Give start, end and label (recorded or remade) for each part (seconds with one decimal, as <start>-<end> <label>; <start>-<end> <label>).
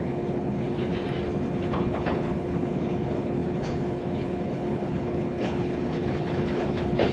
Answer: 0.0-0.9 remade; 0.9-1.6 recorded; 1.6-7.1 remade